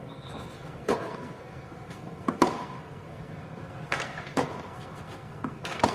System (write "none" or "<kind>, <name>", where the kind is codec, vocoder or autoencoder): codec, SNAC